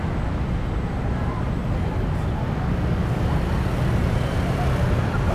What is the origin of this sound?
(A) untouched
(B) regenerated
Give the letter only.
A